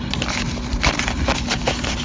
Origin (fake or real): real